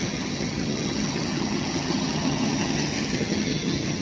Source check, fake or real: fake